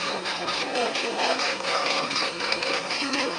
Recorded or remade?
remade